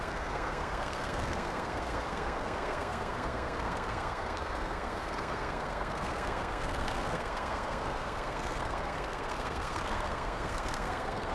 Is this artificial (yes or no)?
yes